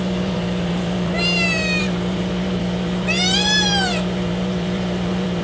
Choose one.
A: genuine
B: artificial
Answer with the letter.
B